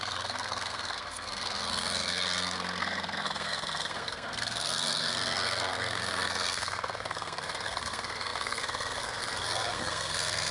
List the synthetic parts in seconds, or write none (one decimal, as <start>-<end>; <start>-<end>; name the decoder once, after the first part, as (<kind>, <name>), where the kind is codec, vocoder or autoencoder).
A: 0.0-10.5 (codec, SNAC)